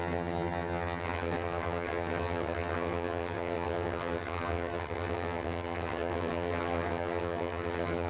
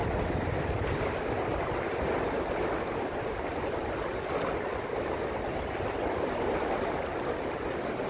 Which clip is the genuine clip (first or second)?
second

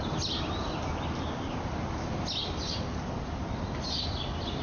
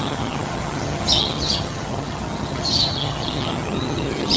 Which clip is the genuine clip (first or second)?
first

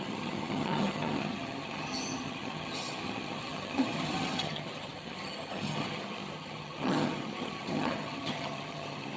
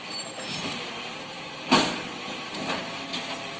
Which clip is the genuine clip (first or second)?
second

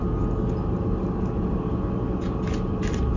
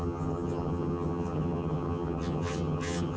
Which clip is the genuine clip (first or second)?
first